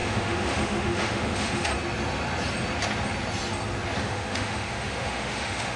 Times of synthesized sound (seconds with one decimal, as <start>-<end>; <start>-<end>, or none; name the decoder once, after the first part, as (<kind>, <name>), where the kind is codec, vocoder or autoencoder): 0.0-1.7 (autoencoder, DAC-VAE); 4.0-5.8